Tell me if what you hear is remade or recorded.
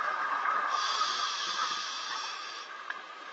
remade